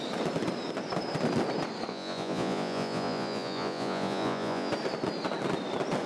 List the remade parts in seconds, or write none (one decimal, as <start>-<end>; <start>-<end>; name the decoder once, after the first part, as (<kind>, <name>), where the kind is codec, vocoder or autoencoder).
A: 1.9-4.7 (vocoder, Vocos)